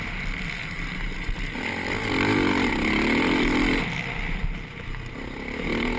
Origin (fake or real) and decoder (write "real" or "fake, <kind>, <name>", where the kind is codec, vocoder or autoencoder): real